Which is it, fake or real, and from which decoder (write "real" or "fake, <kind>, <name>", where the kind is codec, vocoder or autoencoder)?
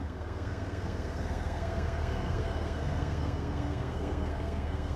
fake, codec, SNAC